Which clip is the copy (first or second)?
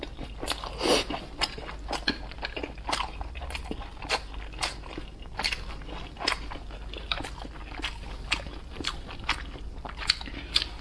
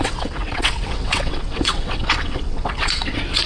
second